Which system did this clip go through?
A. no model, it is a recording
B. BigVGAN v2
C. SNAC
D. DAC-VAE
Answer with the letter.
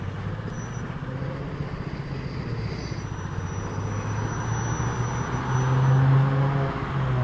A